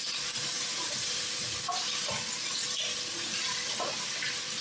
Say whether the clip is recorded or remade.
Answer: recorded